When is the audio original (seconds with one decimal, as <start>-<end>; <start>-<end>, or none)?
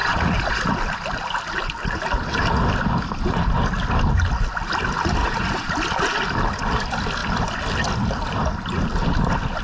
0.6-5.2; 5.7-9.6